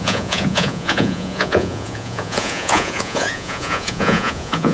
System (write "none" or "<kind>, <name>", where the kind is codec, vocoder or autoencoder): vocoder, Vocos